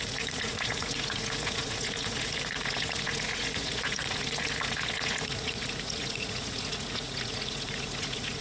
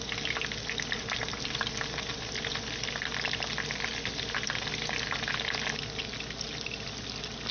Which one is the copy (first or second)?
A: first